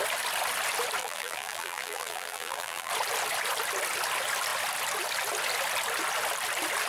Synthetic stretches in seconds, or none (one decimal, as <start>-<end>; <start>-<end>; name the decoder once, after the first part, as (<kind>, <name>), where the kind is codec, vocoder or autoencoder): 1.0-2.9 (vocoder, BigVGAN v2)